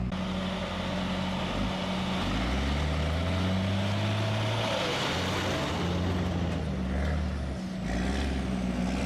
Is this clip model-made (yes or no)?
no